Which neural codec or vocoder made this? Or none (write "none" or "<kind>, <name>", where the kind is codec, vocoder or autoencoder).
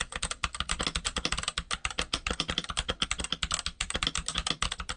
vocoder, BigVGAN v2